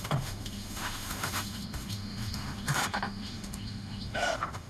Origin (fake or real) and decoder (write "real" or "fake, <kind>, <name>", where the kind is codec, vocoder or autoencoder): fake, autoencoder, DAC-VAE